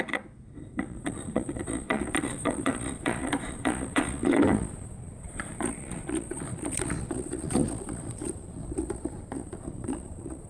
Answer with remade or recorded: remade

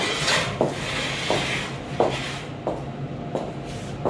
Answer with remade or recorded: recorded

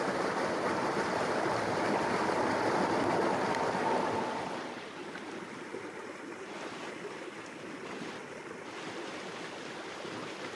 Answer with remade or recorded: recorded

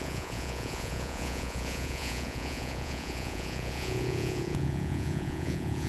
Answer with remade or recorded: remade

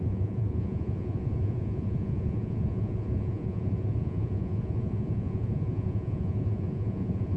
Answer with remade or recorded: remade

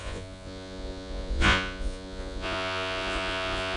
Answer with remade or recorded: remade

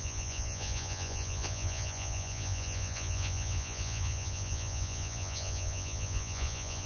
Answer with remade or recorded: remade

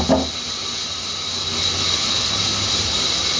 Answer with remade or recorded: recorded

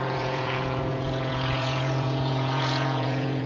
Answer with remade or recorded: remade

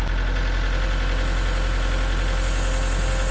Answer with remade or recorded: recorded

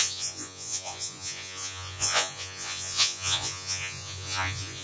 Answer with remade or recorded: remade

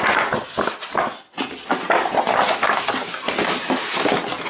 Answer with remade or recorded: recorded